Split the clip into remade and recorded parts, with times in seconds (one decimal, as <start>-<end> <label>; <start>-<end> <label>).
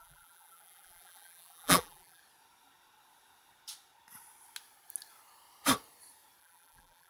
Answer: 0.0-2.2 remade; 2.2-6.4 recorded; 6.4-7.1 remade